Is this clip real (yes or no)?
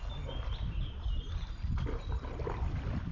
yes